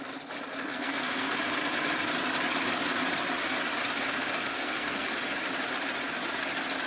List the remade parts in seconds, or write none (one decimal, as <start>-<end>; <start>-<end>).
0.7-1.4; 4.5-5.1